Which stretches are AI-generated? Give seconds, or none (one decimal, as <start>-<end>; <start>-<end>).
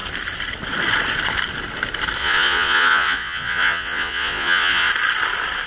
2.2-4.9